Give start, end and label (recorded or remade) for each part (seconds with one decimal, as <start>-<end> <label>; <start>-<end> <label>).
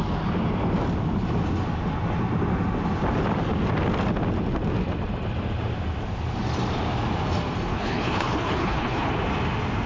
0.0-7.7 recorded; 7.7-9.1 remade; 9.1-9.9 recorded